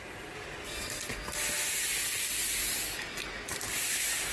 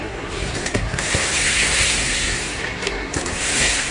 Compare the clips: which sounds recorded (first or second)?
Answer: first